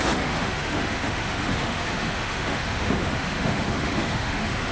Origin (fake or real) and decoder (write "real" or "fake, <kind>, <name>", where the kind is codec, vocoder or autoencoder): fake, autoencoder, DAC-VAE